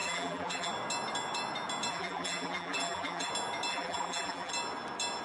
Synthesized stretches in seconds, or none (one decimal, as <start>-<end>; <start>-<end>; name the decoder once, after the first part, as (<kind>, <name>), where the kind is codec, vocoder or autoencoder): 0.0-0.7 (vocoder, BigVGAN v2); 1.9-3.3; 3.7-4.5